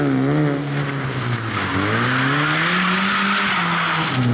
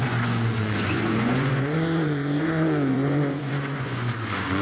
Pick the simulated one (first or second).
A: second